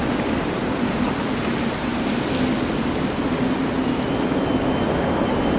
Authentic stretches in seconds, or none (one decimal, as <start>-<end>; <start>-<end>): 0.0-5.6